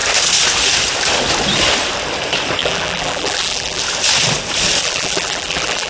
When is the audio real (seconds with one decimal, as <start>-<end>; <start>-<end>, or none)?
0.0-2.6; 3.8-4.8